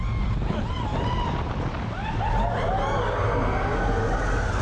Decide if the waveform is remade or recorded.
recorded